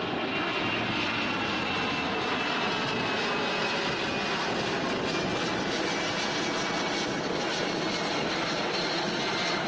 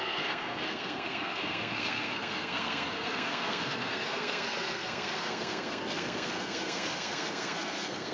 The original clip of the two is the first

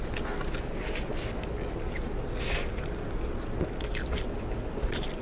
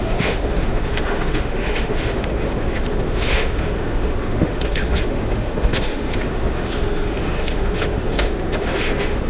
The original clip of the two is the first